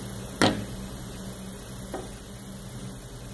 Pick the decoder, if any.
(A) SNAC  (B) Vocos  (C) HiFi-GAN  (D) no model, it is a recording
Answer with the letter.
D